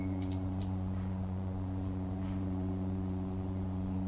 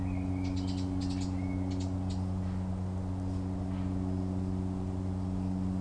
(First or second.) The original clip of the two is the second